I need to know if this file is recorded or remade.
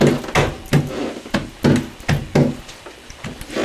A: recorded